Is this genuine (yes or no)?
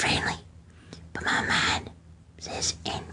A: yes